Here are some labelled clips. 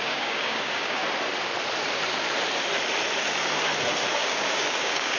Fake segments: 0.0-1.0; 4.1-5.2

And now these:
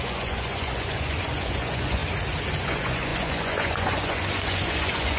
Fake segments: 0.0-2.0; 2.6-5.2

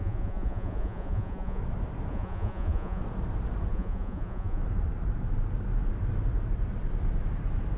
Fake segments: 0.0-1.6; 2.1-3.0; 3.7-4.6

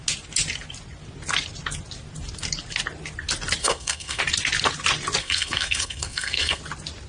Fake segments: 3.6-4.2; 5.2-6.6

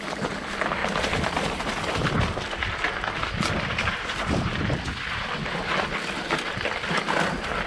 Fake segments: none

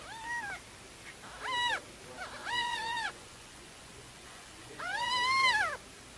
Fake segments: 2.4-5.1

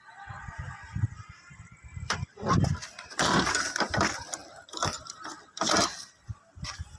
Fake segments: 0.0-7.0

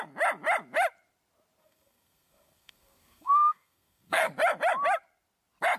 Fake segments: 1.6-4.3